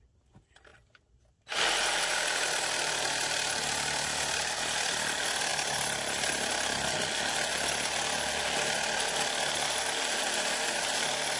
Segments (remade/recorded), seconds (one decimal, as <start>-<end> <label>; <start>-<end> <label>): 0.0-5.5 remade; 5.5-10.2 recorded; 10.2-11.4 remade